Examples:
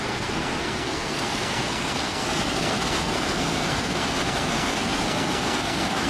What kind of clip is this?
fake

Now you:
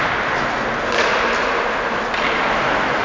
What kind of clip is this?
real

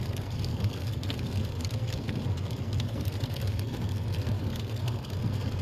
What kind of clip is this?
fake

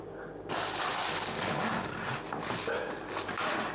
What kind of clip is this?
real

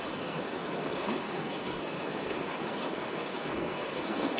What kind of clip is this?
fake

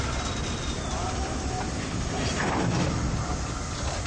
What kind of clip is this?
real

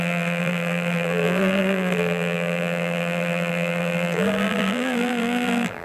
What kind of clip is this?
fake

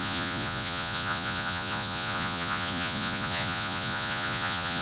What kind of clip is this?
fake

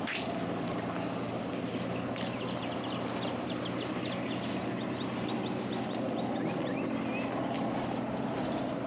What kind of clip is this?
real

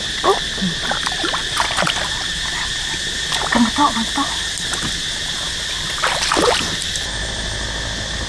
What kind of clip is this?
real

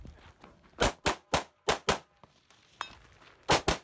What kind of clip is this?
real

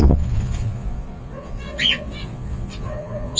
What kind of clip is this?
fake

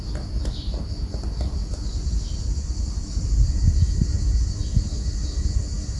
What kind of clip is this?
real